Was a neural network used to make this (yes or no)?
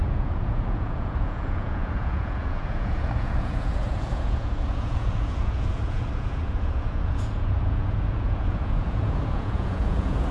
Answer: yes